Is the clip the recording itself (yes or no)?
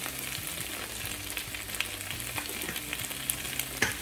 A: yes